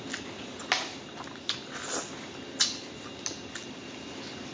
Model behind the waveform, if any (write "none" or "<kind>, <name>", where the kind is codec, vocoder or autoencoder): none